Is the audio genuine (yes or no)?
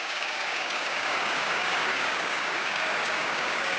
no